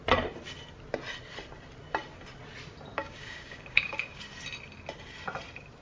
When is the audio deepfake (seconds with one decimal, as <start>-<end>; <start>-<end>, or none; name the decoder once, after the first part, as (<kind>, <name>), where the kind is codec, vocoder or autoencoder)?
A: 2.9-4.2 (codec, DAC)